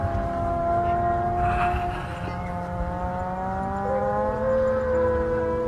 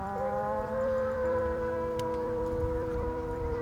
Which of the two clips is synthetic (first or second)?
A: second